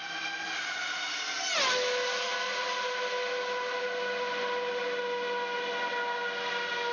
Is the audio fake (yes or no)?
no